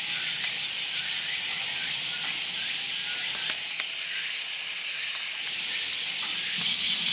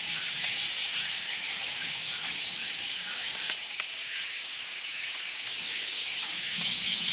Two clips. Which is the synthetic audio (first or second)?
second